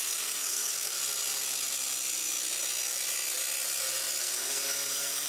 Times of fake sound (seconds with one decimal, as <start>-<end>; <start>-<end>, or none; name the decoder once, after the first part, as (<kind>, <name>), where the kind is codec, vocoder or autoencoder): 0.0-1.0 (codec, SNAC); 4.2-5.3